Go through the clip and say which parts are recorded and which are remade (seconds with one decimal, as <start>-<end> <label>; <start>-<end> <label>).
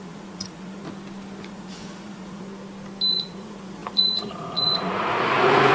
0.0-0.8 remade; 0.8-1.4 recorded; 1.4-2.5 remade; 2.5-3.1 recorded; 3.1-5.7 remade